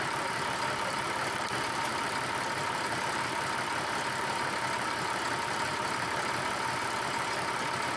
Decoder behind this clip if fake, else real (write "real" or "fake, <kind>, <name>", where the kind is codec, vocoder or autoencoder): fake, vocoder, BigVGAN v2